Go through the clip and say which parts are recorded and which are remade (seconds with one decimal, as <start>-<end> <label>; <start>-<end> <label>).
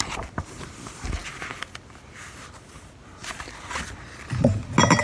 0.0-5.0 recorded